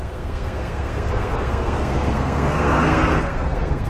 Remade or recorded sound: remade